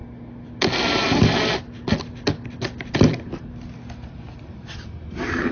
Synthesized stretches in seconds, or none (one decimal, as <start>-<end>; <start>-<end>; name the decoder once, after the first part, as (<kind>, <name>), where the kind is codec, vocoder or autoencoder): none

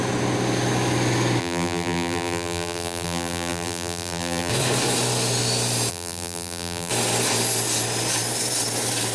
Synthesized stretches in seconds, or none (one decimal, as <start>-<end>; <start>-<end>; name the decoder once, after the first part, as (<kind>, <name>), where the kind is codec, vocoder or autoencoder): 1.4-4.5 (vocoder, BigVGAN v2); 5.9-6.9

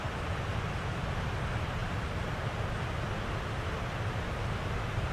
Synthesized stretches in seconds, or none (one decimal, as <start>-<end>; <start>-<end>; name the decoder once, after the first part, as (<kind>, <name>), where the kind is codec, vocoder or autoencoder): 1.8-2.6 (vocoder, BigVGAN v2)

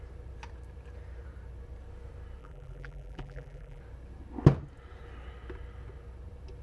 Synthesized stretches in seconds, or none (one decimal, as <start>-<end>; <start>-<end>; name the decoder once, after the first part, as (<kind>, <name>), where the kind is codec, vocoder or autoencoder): 2.4-3.8 (vocoder, BigVGAN v2)

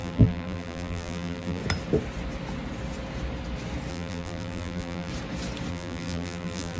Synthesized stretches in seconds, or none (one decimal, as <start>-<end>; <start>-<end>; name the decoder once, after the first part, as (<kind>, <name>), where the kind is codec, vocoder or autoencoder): 0.0-1.6 (vocoder, BigVGAN v2); 3.9-5.1; 5.7-6.8

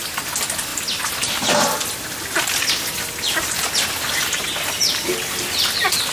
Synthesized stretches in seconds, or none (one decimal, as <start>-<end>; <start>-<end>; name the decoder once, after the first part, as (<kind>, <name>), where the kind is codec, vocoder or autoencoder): none

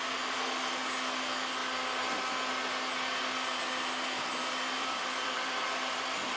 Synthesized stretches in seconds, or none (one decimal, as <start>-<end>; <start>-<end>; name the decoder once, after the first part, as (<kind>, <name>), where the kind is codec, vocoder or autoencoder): 4.8-5.6 (vocoder, BigVGAN v2)